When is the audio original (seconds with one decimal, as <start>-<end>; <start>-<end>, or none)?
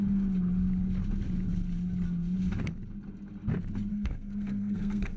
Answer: 0.0-3.9